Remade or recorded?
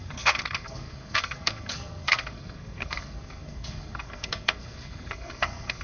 remade